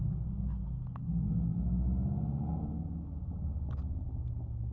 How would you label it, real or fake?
real